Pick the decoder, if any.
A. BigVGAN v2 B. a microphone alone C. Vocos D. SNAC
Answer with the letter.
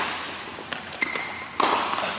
B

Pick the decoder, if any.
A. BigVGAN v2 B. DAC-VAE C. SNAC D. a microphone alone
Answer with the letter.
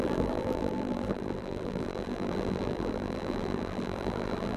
A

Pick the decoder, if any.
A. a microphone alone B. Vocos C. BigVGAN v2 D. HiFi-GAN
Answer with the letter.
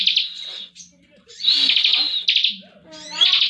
A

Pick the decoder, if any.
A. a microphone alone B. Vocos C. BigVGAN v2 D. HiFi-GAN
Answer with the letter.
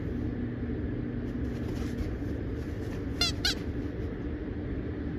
A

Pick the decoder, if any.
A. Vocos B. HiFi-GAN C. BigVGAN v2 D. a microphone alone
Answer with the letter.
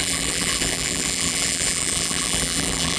C